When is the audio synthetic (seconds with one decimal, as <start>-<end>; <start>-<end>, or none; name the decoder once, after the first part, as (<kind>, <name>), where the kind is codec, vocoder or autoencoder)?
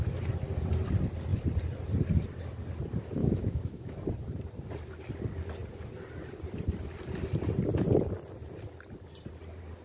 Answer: 3.2-4.1 (autoencoder, DAC-VAE)